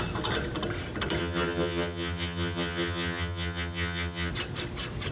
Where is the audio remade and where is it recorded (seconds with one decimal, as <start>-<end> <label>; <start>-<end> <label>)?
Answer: 0.0-1.2 recorded; 1.2-4.3 remade; 4.3-5.1 recorded